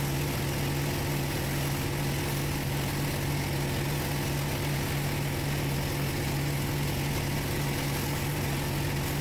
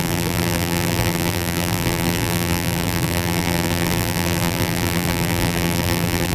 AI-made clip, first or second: second